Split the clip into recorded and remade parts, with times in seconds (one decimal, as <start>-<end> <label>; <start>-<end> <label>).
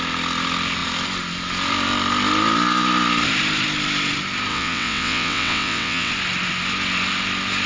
0.0-4.5 recorded; 4.5-6.1 remade; 6.1-7.7 recorded